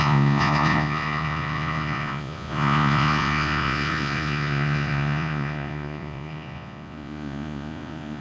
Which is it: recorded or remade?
remade